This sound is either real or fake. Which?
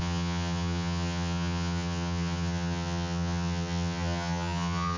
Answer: fake